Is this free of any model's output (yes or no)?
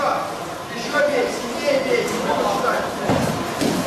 yes